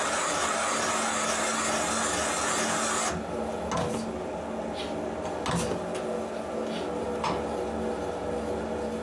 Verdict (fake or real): real